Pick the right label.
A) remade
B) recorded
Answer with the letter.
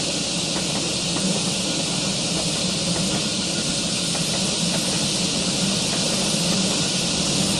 B